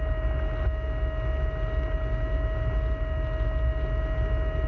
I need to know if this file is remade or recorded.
recorded